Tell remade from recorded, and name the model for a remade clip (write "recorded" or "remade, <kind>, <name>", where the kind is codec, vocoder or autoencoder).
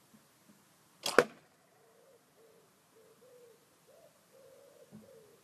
recorded